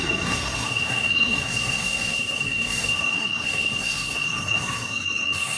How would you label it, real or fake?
fake